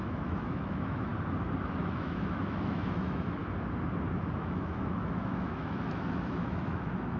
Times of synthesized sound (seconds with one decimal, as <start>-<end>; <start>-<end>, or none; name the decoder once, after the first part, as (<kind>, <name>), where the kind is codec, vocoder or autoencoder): 0.0-1.1 (autoencoder, DAC-VAE); 1.8-3.4; 4.4-7.2